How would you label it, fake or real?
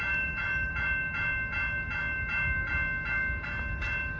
real